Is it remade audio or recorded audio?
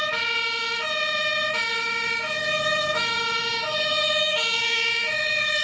remade